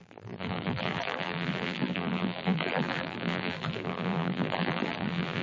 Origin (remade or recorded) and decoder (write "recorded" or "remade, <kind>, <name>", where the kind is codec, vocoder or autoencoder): remade, vocoder, BigVGAN v2